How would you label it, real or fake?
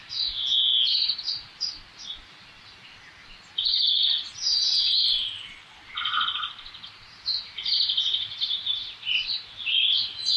real